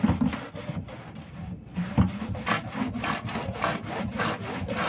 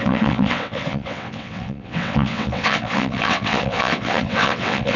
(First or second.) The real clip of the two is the first